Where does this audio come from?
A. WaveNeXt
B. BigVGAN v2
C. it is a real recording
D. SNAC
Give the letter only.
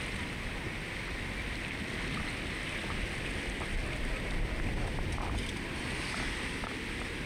C